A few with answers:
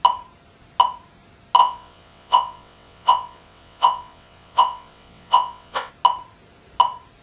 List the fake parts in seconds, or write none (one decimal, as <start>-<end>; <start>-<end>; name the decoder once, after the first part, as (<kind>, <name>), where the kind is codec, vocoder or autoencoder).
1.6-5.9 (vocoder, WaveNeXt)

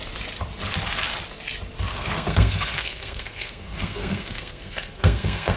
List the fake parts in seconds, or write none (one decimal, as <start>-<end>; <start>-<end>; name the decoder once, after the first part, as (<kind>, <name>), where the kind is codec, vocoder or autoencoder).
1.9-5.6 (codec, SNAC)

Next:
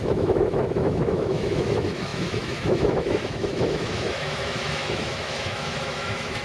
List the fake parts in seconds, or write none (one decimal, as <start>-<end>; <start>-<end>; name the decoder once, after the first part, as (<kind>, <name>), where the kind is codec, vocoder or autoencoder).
0.0-6.4 (autoencoder, DAC-VAE)

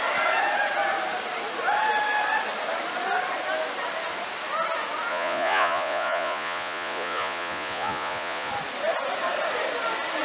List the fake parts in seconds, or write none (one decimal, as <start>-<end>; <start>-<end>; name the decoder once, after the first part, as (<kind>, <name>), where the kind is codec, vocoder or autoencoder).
5.1-8.5 (vocoder, Vocos)

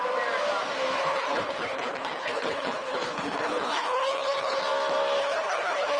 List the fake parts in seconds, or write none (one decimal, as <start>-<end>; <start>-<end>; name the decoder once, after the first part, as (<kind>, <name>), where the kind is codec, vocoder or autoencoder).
1.0-4.6 (codec, HILCodec); 5.2-6.0

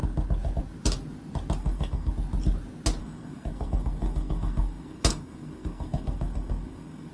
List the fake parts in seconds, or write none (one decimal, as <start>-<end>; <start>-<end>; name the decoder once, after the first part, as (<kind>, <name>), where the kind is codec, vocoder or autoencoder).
1.6-2.1 (codec, SNAC); 3.0-7.1

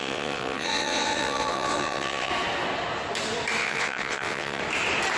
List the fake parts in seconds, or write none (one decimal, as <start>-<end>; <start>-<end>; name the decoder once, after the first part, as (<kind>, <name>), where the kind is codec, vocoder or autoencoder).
0.0-2.3 (vocoder, WaveNeXt); 3.6-4.6

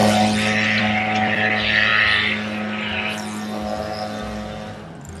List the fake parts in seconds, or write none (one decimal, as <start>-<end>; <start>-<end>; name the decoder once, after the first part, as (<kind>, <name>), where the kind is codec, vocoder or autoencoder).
none